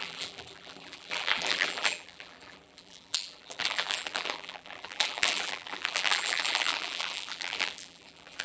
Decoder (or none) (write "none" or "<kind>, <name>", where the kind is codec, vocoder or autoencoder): vocoder, BigVGAN v2